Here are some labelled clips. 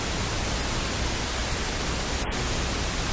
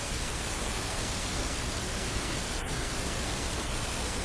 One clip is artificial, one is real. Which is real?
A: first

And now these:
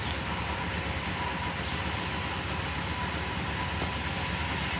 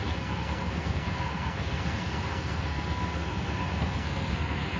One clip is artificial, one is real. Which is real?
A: first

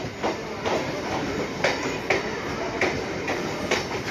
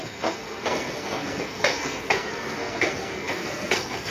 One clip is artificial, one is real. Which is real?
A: first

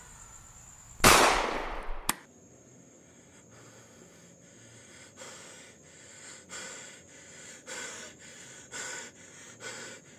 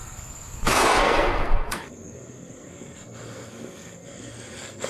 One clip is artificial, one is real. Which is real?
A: first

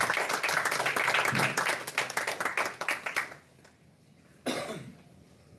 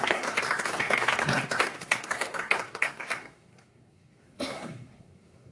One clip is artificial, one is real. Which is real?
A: first